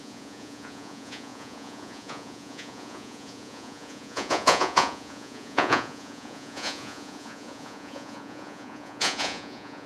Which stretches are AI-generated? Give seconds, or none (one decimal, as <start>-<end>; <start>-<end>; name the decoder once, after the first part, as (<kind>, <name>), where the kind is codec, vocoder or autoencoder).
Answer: 0.0-9.9 (vocoder, Vocos)